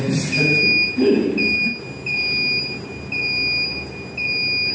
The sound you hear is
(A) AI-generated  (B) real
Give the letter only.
B